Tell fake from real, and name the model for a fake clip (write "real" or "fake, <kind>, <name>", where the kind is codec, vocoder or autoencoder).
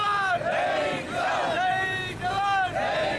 real